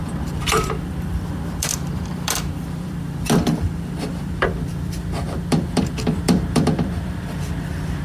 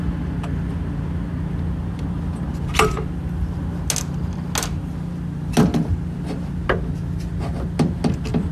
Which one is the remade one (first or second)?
first